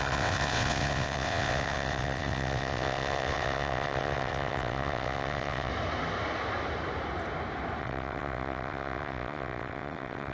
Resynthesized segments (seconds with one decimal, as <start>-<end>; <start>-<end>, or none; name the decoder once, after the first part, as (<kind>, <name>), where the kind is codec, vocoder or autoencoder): 0.0-5.7 (vocoder, WaveNeXt); 7.8-10.3